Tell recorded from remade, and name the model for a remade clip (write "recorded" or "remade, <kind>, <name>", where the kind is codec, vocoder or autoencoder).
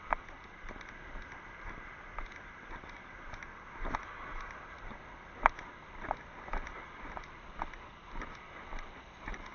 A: recorded